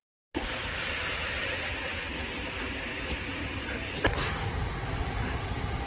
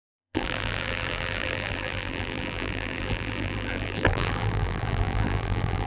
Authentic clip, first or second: first